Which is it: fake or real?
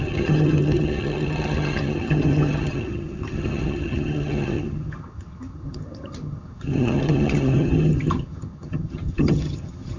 fake